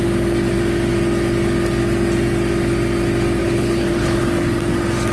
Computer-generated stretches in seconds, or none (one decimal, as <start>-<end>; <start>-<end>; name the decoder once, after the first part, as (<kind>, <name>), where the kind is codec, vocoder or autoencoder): 3.4-4.2 (codec, HILCodec)